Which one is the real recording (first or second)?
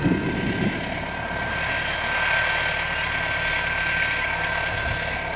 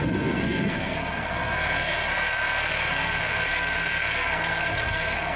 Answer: first